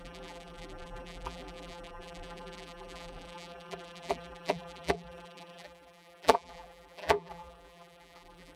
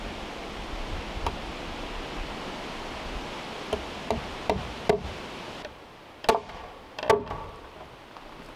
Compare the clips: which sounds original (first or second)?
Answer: second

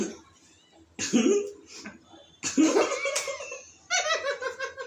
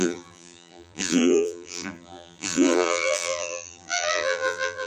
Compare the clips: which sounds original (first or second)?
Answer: first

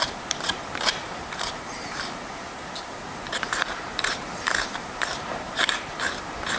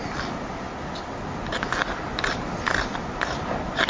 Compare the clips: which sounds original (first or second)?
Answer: second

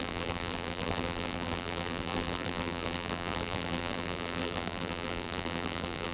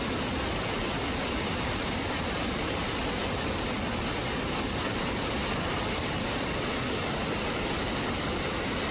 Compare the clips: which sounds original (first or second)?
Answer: second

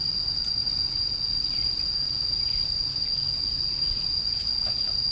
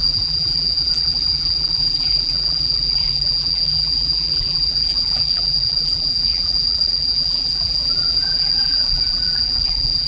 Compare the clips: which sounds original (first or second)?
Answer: first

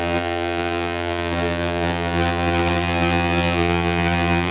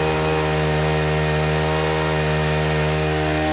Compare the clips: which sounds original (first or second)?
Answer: second